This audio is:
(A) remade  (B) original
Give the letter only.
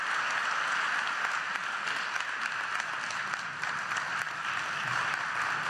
B